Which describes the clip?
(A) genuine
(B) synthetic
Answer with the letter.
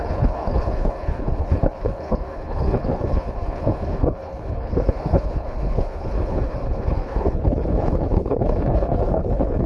B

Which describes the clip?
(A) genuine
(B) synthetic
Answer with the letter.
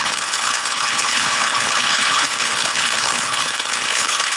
B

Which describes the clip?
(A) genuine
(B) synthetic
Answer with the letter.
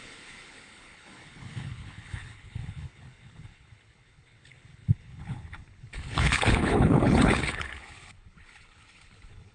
B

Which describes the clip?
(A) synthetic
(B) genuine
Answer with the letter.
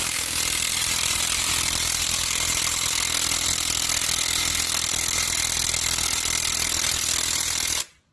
B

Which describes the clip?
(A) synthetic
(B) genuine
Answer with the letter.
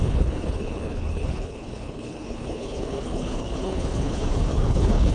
A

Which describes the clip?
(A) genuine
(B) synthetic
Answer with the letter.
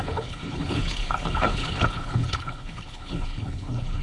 B